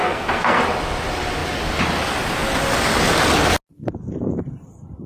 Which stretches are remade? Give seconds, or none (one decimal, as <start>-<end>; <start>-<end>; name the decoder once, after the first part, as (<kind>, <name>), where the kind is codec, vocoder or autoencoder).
0.0-0.6 (codec, SNAC)